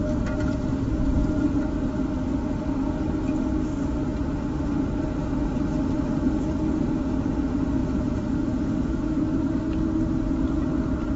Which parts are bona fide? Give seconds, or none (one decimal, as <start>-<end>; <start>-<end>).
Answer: 0.0-7.8; 9.5-11.2